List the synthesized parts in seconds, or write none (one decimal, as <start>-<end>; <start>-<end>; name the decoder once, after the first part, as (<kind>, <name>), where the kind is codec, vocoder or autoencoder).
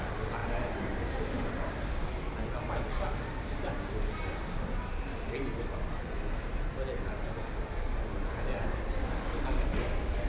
0.4-2.1 (vocoder, BigVGAN v2)